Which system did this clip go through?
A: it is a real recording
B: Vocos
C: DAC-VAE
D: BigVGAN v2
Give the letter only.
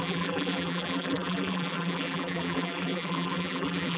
D